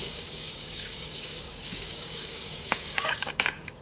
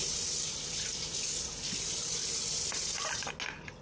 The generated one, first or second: first